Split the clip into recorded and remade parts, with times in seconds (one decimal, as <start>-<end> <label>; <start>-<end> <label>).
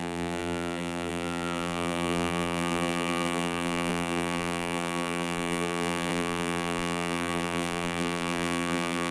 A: 0.0-9.1 remade